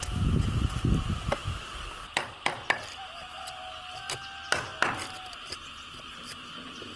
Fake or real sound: real